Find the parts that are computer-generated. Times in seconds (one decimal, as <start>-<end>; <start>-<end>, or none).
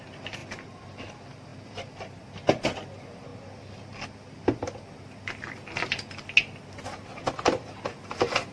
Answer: none